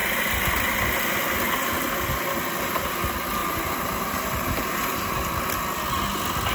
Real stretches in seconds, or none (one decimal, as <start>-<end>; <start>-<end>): 0.0-3.4; 5.1-6.5